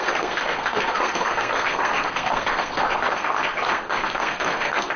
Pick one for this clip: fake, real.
fake